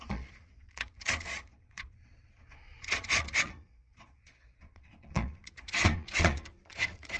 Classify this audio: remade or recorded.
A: remade